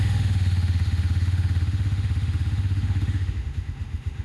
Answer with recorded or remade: remade